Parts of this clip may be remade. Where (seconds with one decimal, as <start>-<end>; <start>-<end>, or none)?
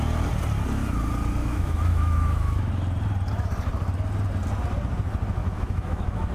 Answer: 1.4-2.7; 5.4-6.3